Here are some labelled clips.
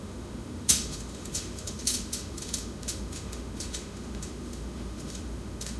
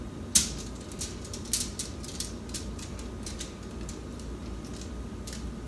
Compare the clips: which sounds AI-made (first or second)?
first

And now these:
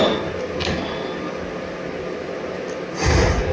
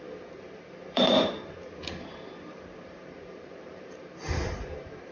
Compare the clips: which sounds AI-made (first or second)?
second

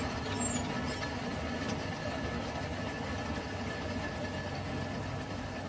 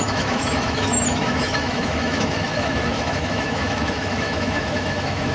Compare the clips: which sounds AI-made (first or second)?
second